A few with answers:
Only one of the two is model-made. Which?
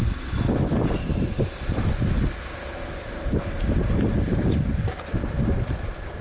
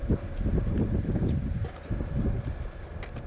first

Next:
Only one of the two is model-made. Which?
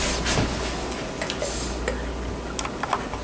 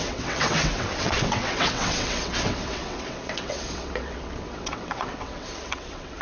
second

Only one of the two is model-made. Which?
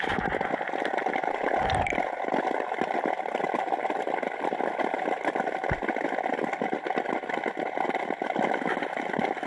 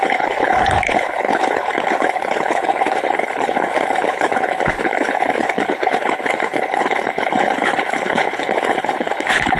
second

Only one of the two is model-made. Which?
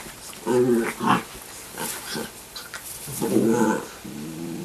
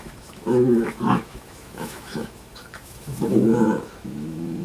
second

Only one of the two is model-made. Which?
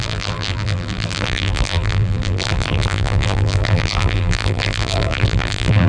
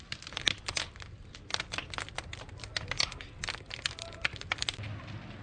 first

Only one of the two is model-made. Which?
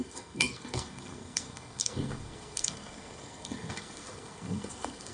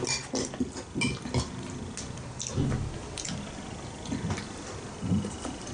first